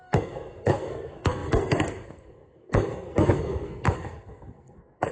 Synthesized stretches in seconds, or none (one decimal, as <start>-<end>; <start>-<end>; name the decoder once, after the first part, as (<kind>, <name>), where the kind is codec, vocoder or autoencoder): 0.0-5.1 (codec, SNAC)